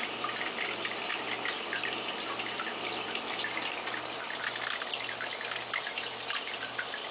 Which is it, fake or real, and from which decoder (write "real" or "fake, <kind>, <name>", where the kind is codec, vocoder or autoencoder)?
real